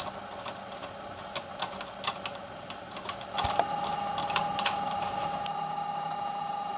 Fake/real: real